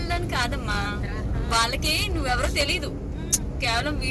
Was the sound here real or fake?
real